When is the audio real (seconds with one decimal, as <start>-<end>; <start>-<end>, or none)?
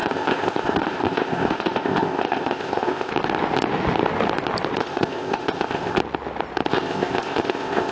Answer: 3.1-4.8; 6.0-6.7